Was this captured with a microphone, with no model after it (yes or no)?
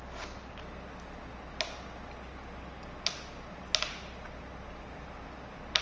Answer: yes